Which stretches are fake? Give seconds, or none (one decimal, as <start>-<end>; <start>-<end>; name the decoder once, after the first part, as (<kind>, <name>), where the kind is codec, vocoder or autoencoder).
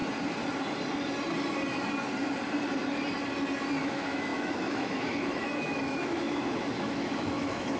3.8-7.8 (autoencoder, DAC-VAE)